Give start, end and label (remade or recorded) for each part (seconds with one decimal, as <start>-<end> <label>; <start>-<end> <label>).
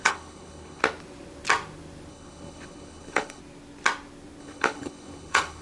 0.0-0.8 remade; 0.8-2.1 recorded; 2.1-3.4 remade; 3.4-4.4 recorded; 4.4-5.6 remade